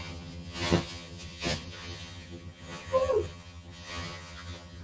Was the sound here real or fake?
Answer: fake